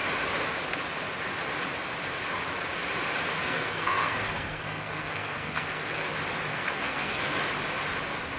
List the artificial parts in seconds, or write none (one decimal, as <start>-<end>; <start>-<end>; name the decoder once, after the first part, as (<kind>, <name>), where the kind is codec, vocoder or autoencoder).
3.3-6.1 (codec, SNAC); 6.5-7.3